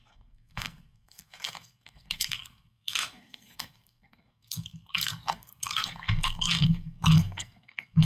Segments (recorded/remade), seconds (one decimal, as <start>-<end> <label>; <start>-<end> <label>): 0.0-8.0 remade